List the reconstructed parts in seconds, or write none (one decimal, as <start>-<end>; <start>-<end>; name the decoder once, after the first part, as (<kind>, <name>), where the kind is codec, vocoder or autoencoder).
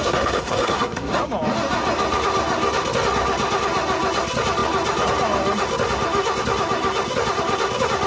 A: 0.0-1.1 (codec, SNAC)